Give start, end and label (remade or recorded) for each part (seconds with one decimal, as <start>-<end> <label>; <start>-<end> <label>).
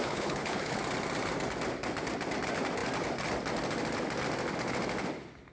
0.0-0.8 remade; 0.8-5.5 recorded